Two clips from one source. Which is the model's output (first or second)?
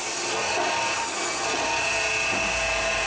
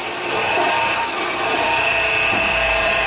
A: second